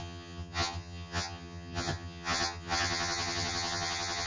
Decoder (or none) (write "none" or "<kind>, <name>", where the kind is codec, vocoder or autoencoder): vocoder, HiFi-GAN